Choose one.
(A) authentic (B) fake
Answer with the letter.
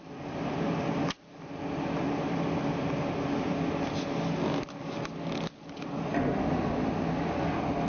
A